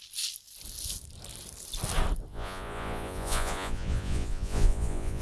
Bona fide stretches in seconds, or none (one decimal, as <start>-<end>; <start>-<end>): 0.0-2.3